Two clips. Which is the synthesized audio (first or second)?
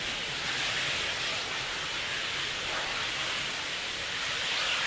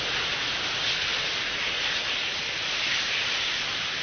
second